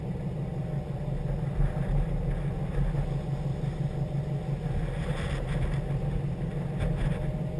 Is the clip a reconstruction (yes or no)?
no